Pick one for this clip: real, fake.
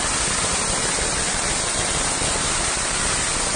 real